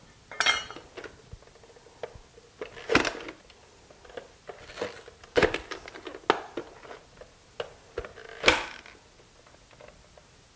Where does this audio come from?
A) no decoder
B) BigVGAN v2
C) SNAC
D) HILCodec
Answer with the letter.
A